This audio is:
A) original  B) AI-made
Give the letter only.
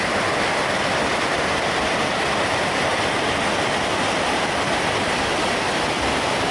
A